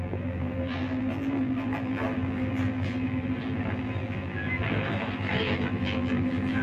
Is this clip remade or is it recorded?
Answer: remade